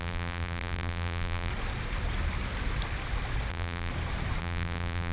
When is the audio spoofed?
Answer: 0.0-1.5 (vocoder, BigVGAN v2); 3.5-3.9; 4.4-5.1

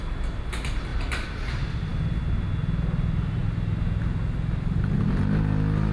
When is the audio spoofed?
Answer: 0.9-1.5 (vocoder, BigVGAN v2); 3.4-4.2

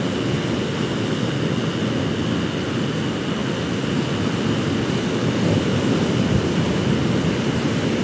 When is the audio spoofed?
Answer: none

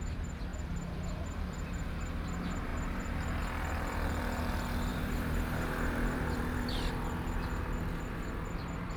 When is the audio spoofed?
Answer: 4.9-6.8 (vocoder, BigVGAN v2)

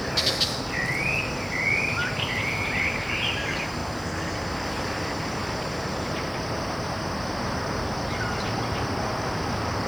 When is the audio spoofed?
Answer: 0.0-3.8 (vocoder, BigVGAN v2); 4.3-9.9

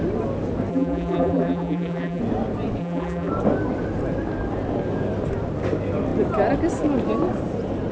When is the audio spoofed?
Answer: 0.7-2.2 (vocoder, BigVGAN v2); 2.8-3.3

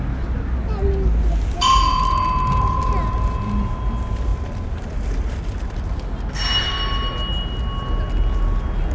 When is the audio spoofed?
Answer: 4.3-6.0 (vocoder, BigVGAN v2)